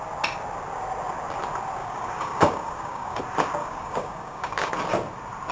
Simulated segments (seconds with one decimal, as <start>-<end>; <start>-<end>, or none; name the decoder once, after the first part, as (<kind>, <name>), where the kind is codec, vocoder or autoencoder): 1.8-3.2 (codec, DAC); 3.6-4.7